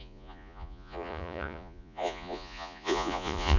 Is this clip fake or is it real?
fake